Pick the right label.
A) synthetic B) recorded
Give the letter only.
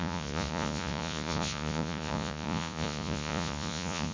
A